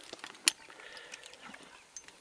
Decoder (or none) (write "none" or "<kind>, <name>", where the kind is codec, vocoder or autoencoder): none